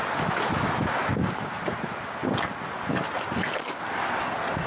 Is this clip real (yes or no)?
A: yes